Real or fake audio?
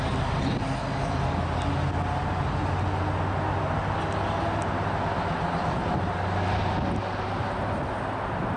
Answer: real